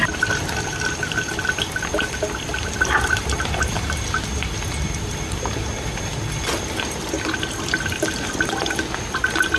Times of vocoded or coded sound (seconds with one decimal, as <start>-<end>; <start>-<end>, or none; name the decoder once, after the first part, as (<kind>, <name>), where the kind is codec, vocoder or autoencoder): none

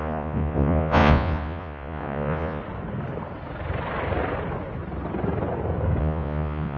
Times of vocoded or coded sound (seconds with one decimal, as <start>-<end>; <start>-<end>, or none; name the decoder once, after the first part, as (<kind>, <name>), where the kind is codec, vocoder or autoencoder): 0.0-2.6 (vocoder, Vocos); 6.0-6.8

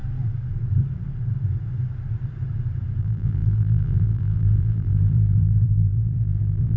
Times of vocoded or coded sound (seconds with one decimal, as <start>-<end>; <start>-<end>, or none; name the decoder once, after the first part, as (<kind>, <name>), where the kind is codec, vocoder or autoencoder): 3.0-6.8 (vocoder, BigVGAN v2)

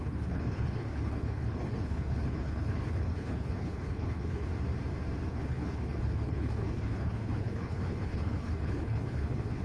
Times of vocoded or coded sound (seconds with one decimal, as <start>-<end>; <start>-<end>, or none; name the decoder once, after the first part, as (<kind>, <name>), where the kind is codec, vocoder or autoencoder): 0.0-4.5 (codec, HILCodec); 5.3-9.6

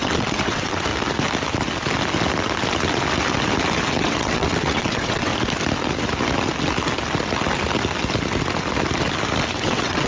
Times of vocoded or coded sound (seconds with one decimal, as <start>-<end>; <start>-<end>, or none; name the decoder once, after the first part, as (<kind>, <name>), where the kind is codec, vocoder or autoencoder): 0.0-0.9 (vocoder, WaveNeXt); 4.0-5.3; 9.5-10.1

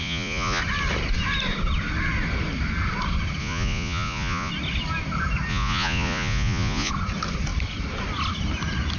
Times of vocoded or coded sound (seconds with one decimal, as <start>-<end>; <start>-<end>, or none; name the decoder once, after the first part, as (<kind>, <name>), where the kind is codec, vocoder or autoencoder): 0.0-0.6 (vocoder, Vocos); 3.4-4.5; 5.5-6.9